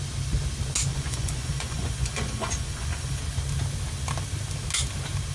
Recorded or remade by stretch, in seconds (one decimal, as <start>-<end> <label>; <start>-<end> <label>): 0.0-0.9 recorded; 0.9-3.2 remade; 3.2-5.3 recorded